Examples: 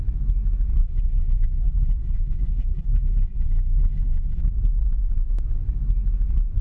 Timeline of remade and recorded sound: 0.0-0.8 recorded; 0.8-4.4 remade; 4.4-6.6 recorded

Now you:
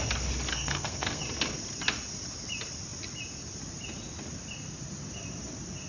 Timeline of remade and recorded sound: 0.0-0.5 recorded; 0.5-1.2 remade; 1.2-5.9 recorded

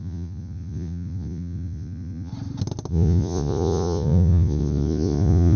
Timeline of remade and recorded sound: 0.0-2.3 remade; 2.3-2.9 recorded; 2.9-5.6 remade

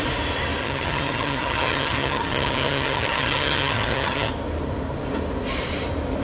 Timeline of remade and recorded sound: 0.0-0.6 recorded; 0.6-4.3 remade; 4.3-6.2 recorded

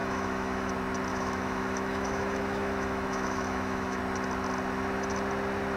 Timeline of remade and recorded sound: 0.0-0.7 remade; 0.7-1.1 recorded; 1.1-4.0 remade; 4.0-5.8 recorded

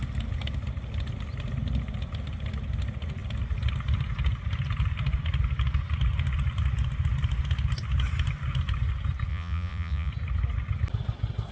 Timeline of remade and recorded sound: 0.0-9.3 recorded; 9.3-10.1 remade; 10.1-11.5 recorded

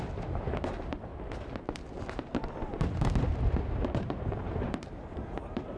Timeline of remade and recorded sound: 0.0-1.1 remade; 1.1-1.6 recorded; 1.6-5.8 remade

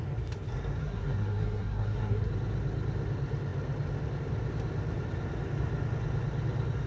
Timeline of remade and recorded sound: 0.0-0.8 recorded; 0.8-2.3 remade; 2.3-6.9 recorded